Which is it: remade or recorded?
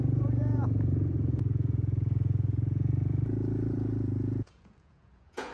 remade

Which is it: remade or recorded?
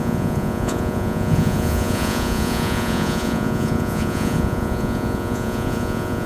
remade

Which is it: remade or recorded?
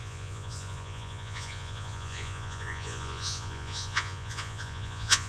remade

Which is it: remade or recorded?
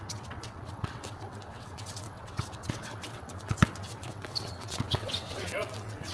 remade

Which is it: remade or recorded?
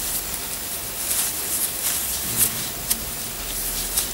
recorded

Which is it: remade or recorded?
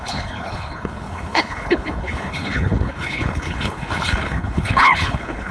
remade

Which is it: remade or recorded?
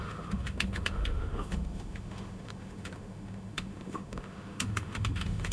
remade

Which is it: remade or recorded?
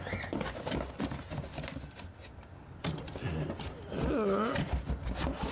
recorded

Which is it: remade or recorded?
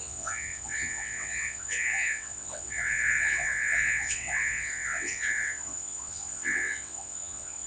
remade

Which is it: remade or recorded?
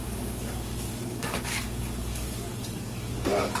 remade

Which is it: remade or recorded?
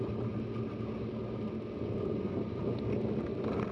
recorded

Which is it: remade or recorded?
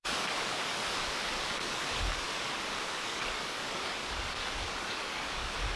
remade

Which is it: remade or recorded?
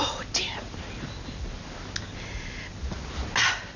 recorded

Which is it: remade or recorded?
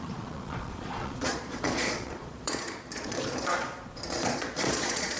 remade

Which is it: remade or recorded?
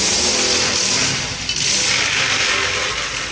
recorded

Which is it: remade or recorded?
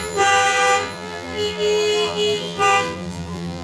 remade